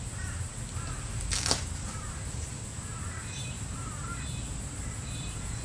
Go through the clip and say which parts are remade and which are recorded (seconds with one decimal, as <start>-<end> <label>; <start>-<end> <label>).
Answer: 0.0-0.5 remade; 0.5-1.6 recorded; 1.6-5.6 remade